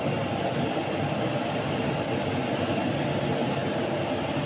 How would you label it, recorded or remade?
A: recorded